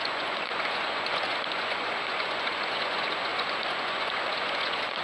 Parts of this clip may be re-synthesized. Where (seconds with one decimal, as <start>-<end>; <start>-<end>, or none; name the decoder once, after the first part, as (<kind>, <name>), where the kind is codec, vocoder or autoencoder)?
0.0-5.0 (vocoder, Vocos)